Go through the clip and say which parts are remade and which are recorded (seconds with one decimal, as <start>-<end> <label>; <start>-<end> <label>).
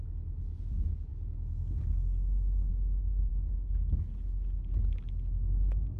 0.0-6.0 recorded